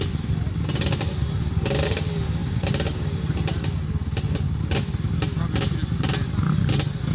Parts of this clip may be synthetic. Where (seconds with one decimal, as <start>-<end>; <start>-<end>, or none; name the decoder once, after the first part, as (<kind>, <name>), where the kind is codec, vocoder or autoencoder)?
none